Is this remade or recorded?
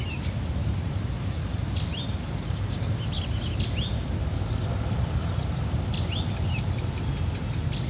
recorded